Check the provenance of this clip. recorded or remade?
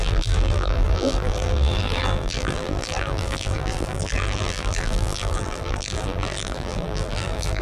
remade